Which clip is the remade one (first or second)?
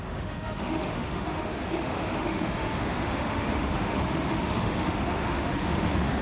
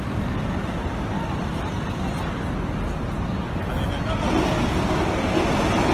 first